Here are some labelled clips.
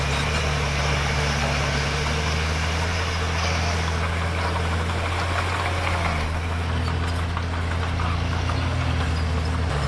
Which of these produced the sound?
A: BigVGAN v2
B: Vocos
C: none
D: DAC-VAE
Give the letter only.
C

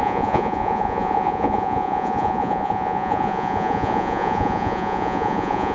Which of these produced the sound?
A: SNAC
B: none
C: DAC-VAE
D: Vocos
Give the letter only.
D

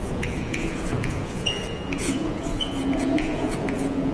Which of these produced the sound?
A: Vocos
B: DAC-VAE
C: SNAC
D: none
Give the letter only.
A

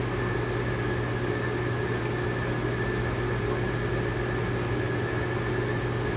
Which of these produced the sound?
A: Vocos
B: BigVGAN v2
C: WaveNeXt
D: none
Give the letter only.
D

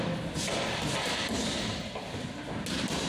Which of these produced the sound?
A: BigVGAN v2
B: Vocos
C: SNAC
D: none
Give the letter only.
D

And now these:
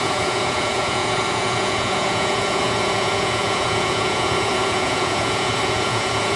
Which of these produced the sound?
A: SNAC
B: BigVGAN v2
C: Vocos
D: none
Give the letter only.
C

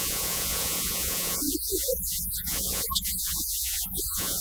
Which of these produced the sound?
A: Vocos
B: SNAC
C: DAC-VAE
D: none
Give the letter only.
A